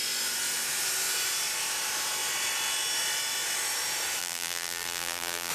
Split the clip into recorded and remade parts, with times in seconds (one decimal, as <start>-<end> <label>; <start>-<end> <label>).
0.0-4.2 recorded; 4.2-5.5 remade